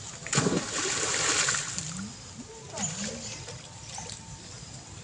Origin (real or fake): real